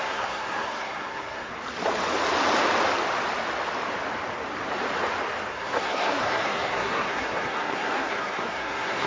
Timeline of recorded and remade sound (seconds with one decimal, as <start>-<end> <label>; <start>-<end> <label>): 0.0-1.5 remade; 1.5-5.5 recorded; 5.5-9.1 remade

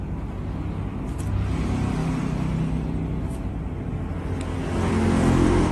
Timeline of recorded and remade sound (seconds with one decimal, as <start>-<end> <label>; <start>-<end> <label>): 0.0-4.9 recorded; 4.9-5.7 remade

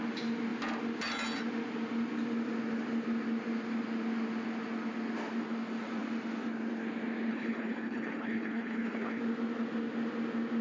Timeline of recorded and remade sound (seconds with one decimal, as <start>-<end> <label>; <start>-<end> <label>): 0.0-7.3 recorded; 7.3-9.2 remade; 9.2-10.6 recorded

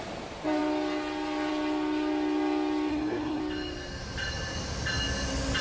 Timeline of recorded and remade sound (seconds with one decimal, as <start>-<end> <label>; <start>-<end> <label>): 0.0-2.9 recorded; 2.9-3.4 remade; 3.4-5.6 recorded

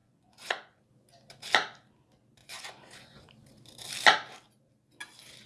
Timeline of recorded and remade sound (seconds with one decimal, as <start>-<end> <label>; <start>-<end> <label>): 0.0-0.8 remade; 0.8-2.4 recorded; 2.4-3.3 remade; 3.3-5.5 recorded